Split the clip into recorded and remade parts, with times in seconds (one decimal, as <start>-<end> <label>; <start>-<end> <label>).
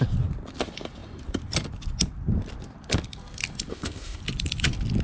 0.0-3.7 recorded; 3.7-4.2 remade; 4.2-5.0 recorded